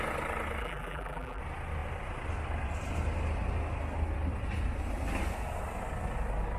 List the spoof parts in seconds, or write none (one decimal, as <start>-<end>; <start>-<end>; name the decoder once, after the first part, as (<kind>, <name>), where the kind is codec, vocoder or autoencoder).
0.6-1.4 (vocoder, BigVGAN v2)